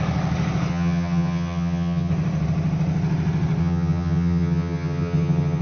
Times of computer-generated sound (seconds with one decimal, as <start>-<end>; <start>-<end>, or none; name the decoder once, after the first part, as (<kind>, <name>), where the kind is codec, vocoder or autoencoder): 0.7-2.1 (vocoder, HiFi-GAN); 3.6-5.6